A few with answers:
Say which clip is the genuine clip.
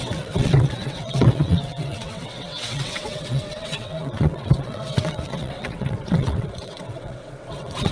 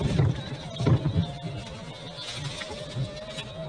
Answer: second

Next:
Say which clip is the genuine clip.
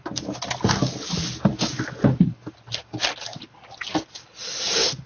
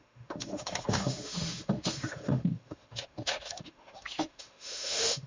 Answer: first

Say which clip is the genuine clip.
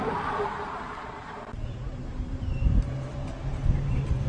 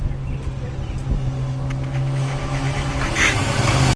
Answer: second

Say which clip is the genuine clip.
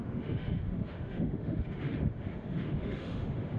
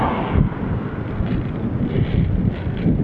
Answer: second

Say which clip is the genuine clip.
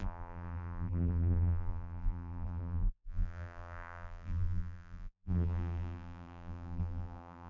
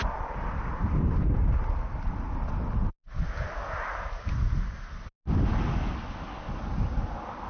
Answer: second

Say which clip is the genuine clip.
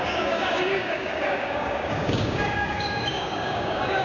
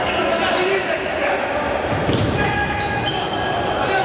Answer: second